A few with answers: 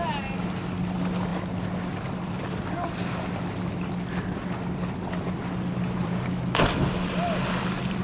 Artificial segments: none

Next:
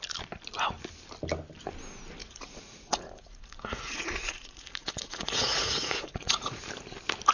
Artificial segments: 2.2-6.6